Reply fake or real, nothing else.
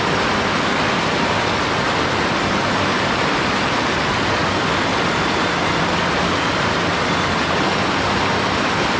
real